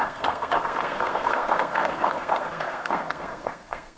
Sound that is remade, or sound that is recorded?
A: remade